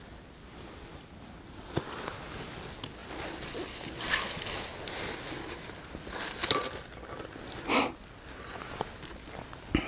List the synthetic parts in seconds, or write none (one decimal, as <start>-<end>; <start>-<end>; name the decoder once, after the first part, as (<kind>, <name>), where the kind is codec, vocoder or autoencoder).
none